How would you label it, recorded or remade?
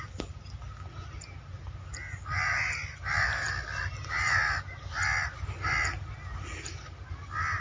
recorded